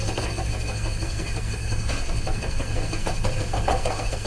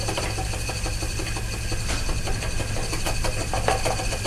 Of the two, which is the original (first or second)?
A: second